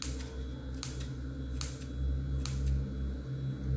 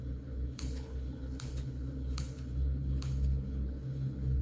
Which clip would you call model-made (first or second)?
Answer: second